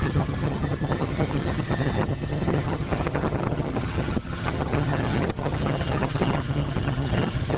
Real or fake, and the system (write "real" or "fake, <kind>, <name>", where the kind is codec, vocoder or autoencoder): fake, vocoder, HiFi-GAN